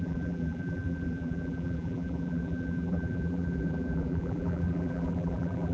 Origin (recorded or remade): remade